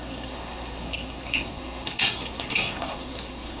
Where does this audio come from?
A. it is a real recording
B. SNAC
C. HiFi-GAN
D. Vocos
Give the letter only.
B